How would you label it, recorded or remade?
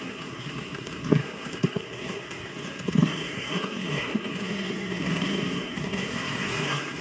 remade